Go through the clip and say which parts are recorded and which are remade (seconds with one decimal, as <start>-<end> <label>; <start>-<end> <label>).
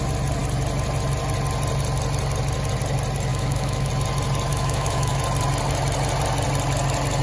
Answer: 0.0-3.3 recorded; 3.3-3.9 remade; 3.9-4.5 recorded; 4.5-5.2 remade; 5.2-7.2 recorded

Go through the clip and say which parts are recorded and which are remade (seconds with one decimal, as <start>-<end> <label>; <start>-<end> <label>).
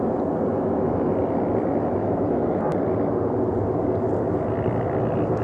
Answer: 0.0-0.5 recorded; 0.5-1.1 remade; 1.1-2.0 recorded; 2.0-2.6 remade; 2.6-5.4 recorded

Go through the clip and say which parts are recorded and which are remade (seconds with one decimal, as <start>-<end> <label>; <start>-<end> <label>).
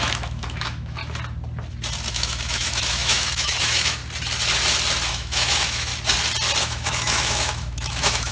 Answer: 0.0-1.0 remade; 1.0-2.1 recorded; 2.1-4.0 remade; 4.0-5.1 recorded; 5.1-5.9 remade; 5.9-6.6 recorded; 6.6-8.3 remade